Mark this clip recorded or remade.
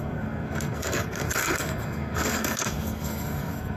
remade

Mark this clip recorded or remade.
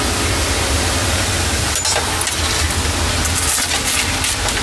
recorded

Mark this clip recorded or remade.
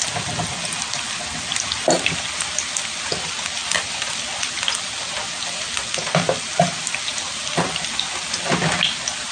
recorded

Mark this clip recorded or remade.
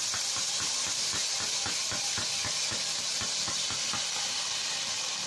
recorded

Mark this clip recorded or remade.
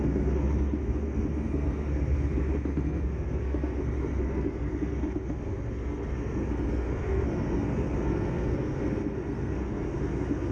remade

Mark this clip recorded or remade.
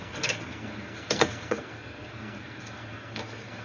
remade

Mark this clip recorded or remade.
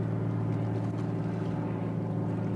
recorded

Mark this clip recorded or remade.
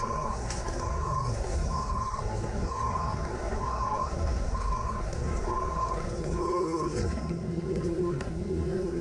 remade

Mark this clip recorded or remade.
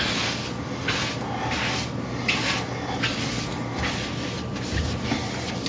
recorded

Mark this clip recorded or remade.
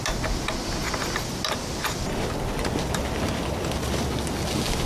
recorded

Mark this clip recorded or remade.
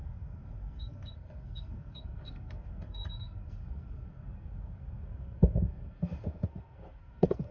remade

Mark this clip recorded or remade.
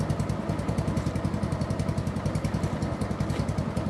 recorded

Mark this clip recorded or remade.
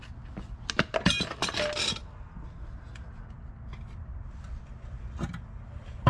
recorded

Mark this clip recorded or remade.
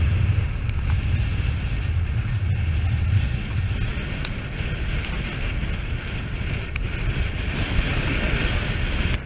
recorded